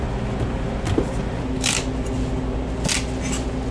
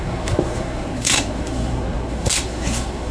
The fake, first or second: second